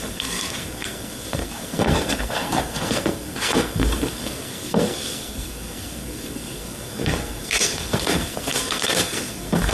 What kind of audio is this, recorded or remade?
remade